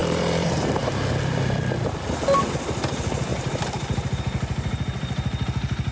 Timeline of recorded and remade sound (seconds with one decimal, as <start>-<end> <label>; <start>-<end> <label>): 0.0-1.2 remade; 1.2-3.3 recorded; 3.3-4.2 remade; 4.2-5.9 recorded